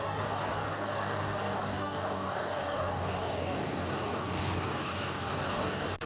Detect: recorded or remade remade